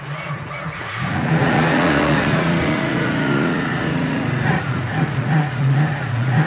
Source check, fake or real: fake